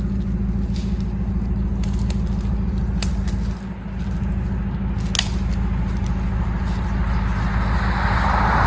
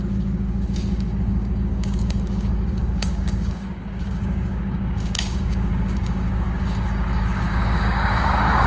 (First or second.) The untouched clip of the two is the first